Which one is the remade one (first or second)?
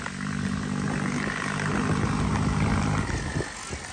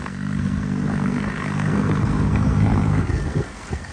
second